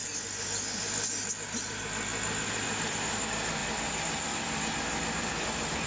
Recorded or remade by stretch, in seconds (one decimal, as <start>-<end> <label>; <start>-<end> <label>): 0.0-2.1 recorded; 2.1-3.0 remade; 3.0-3.6 recorded; 3.6-5.9 remade